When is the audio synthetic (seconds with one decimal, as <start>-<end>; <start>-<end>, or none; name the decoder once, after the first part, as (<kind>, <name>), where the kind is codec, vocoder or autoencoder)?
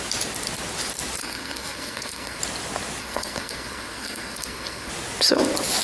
1.2-2.4 (codec, SNAC); 3.0-4.9